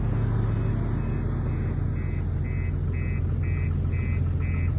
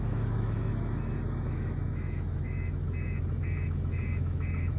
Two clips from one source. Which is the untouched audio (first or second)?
first